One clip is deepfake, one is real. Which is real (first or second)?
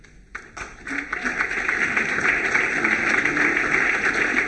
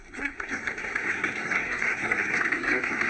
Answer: first